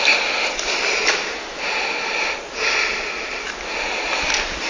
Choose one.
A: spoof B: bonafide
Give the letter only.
B